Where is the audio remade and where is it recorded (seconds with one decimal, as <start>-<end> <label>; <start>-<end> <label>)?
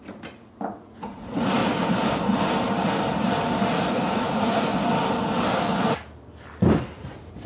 0.0-1.6 remade; 1.6-3.9 recorded; 3.9-4.7 remade; 4.7-6.9 recorded; 6.9-7.5 remade